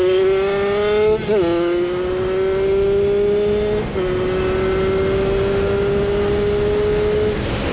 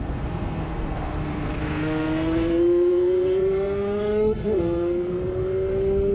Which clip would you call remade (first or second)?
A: second